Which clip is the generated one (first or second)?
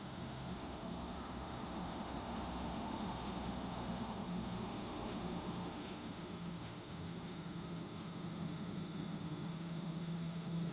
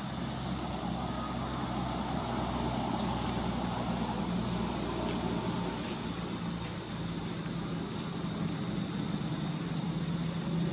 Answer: first